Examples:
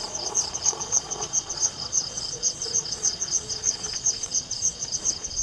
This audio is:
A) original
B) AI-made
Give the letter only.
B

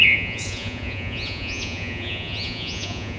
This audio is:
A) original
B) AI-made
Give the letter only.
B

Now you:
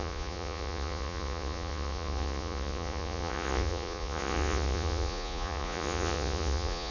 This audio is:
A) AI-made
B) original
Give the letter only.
A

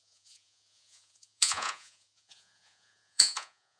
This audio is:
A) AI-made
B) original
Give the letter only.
A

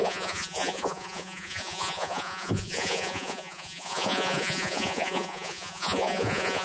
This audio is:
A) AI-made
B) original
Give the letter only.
A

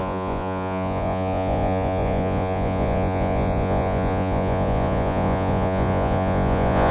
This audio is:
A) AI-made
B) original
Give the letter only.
A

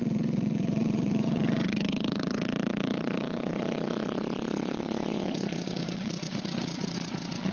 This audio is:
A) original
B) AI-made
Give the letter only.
B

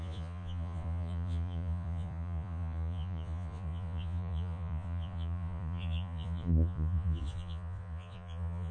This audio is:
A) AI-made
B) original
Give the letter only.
A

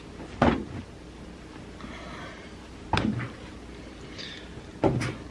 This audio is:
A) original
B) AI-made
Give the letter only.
A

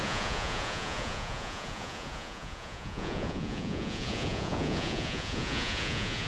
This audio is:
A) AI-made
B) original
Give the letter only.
A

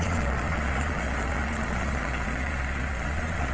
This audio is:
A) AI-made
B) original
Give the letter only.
A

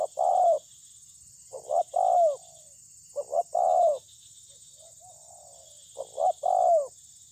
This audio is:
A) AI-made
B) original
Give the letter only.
B